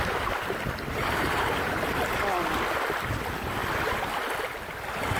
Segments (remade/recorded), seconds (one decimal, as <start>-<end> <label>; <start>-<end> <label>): 0.0-1.0 recorded; 1.0-1.9 remade; 1.9-5.2 recorded

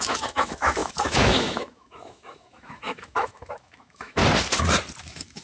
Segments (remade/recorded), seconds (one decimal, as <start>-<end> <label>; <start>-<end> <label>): 0.0-4.2 remade; 4.2-5.0 recorded; 5.0-5.4 remade

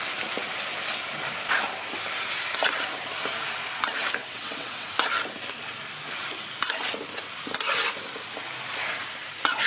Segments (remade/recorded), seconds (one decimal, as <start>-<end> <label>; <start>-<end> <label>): 0.0-4.2 recorded; 4.2-4.9 remade; 4.9-9.7 recorded

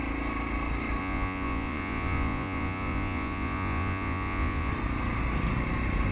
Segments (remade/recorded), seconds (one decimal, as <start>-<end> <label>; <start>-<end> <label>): 0.0-1.0 recorded; 1.0-4.7 remade; 4.7-6.1 recorded

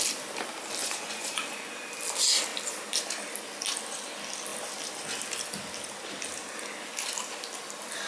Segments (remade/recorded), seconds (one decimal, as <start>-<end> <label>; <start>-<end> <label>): 0.0-0.8 recorded; 0.8-1.7 remade; 1.7-8.1 recorded